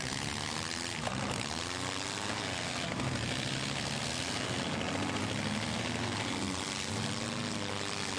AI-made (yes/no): no